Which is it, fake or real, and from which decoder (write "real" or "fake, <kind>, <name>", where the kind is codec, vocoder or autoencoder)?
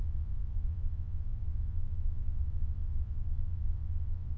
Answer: fake, vocoder, WaveNeXt